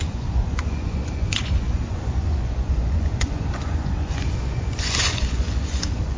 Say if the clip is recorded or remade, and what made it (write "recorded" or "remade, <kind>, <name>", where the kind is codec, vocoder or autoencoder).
remade, vocoder, Vocos